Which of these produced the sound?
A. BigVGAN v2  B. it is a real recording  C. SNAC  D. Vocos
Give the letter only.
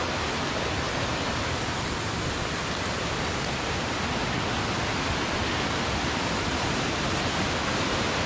B